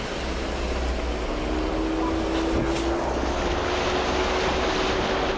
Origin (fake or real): real